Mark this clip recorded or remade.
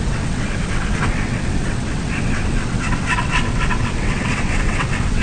remade